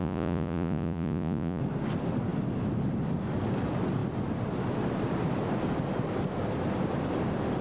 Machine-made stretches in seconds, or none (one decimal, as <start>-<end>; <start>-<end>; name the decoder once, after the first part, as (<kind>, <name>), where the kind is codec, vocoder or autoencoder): 0.0-1.6 (vocoder, Vocos)